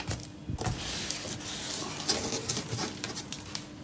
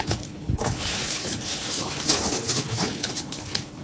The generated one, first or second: second